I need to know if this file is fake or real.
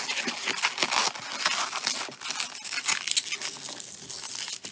real